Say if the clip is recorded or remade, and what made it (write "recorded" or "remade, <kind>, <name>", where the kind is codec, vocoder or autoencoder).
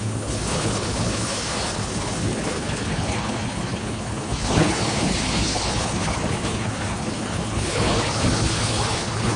remade, codec, HILCodec